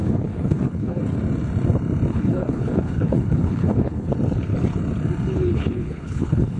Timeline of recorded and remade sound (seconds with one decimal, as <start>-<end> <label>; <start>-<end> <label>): 0.0-1.0 remade; 1.0-2.1 recorded; 2.1-4.1 remade; 4.1-5.3 recorded; 5.3-6.6 remade